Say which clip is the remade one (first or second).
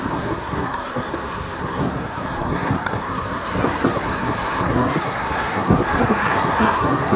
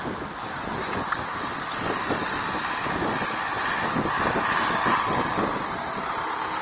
first